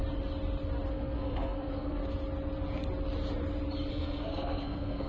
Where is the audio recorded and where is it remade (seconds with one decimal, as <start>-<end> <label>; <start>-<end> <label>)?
0.0-0.9 recorded; 0.9-2.0 remade; 2.0-3.9 recorded; 3.9-5.1 remade